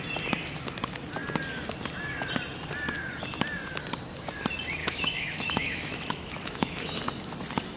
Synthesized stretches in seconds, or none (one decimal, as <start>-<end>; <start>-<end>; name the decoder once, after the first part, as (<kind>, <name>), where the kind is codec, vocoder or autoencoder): 4.8-7.0 (autoencoder, DAC-VAE)